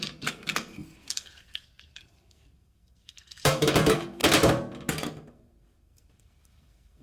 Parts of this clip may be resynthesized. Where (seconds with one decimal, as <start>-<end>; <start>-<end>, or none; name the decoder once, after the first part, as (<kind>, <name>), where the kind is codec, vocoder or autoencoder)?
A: 0.0-4.2 (codec, SNAC); 4.9-7.0